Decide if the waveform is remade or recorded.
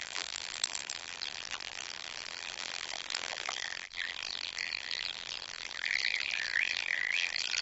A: remade